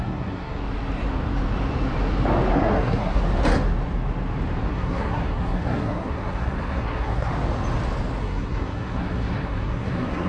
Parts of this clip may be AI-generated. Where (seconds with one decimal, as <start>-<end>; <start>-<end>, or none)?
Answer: 0.0-0.6; 2.5-3.2; 4.6-7.3; 8.2-10.3